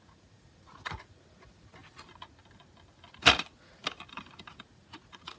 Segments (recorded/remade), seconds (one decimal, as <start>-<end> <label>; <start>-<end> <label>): 0.0-1.8 remade; 1.8-3.4 recorded; 3.4-3.8 remade; 3.8-4.8 recorded; 4.8-5.4 remade